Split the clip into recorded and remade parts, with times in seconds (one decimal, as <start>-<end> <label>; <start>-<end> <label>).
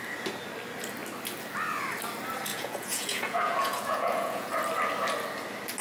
0.0-2.5 recorded; 2.5-4.5 remade; 4.5-5.8 recorded